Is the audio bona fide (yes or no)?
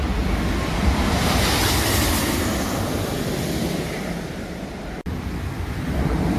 yes